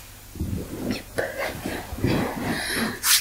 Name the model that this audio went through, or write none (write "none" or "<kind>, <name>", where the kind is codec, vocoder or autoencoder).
none